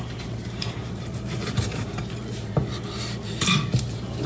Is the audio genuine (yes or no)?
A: no